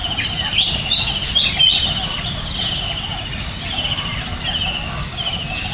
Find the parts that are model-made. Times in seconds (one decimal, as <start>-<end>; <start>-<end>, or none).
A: none